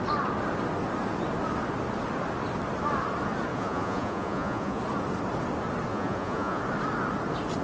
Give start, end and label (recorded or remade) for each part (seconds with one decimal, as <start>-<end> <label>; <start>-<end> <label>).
0.0-3.5 recorded; 3.5-4.8 remade; 4.8-5.9 recorded; 5.9-6.6 remade; 6.6-7.6 recorded